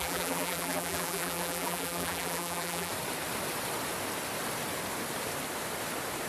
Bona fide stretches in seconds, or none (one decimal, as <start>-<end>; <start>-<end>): 2.9-6.3